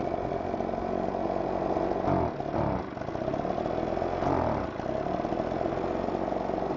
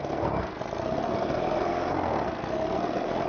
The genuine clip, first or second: first